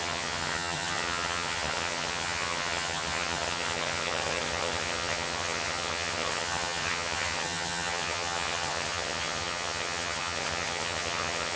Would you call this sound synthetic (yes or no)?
yes